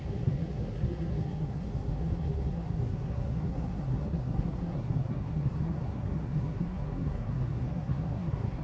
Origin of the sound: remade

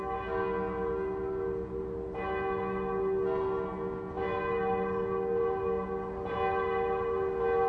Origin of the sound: recorded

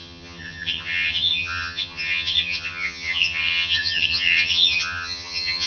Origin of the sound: remade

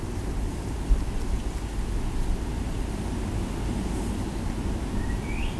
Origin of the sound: recorded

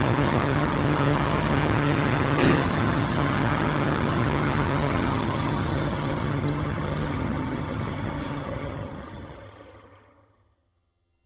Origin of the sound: remade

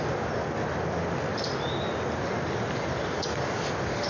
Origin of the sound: recorded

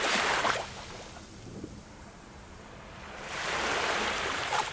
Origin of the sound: remade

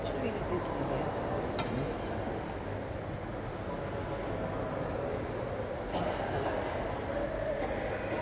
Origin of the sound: recorded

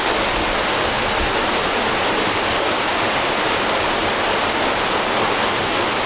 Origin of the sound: recorded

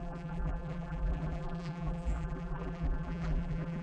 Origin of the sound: remade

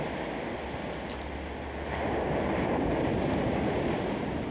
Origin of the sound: recorded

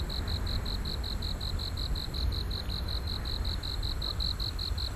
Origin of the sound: recorded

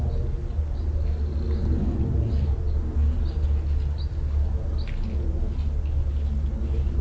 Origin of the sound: recorded